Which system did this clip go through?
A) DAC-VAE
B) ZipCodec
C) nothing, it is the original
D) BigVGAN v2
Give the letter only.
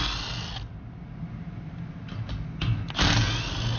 C